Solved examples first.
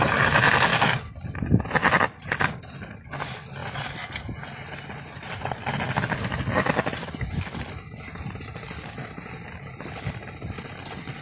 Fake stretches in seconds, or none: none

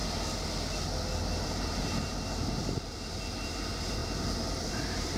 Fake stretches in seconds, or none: 1.4-2.1 (vocoder, BigVGAN v2); 2.6-4.0; 4.7-5.2

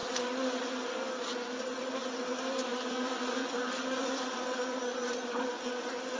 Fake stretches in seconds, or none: 0.0-1.3 (vocoder, BigVGAN v2); 2.7-5.7